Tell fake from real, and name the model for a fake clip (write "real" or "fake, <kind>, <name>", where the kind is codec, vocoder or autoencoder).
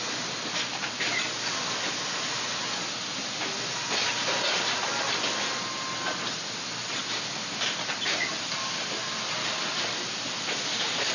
real